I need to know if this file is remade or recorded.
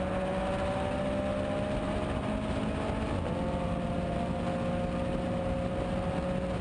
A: recorded